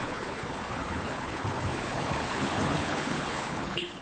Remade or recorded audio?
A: remade